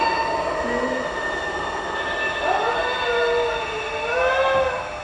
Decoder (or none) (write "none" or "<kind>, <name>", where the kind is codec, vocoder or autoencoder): none